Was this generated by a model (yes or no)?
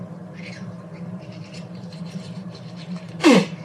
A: yes